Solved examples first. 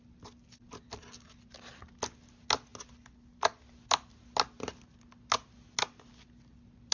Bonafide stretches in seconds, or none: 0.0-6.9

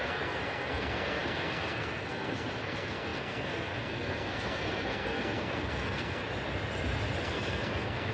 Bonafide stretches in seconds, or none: 6.2-7.2

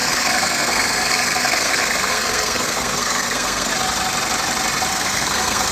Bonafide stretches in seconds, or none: 3.7-4.9